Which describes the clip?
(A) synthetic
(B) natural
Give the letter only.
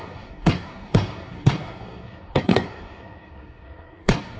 A